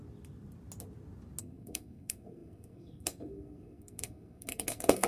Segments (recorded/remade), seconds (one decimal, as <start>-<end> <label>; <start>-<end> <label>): 0.0-1.4 recorded; 1.4-5.1 remade